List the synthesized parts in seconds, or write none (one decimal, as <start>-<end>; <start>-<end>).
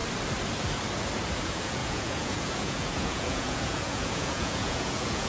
1.4-5.3